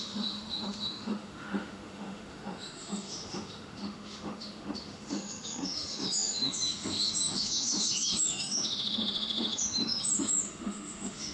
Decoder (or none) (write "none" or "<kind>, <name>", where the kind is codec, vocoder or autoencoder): autoencoder, DAC-VAE